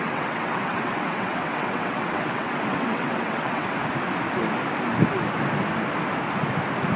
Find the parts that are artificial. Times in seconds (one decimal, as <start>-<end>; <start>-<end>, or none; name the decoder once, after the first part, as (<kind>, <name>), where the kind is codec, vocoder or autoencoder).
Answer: 0.0-3.8 (vocoder, WaveNeXt)